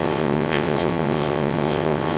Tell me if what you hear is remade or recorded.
remade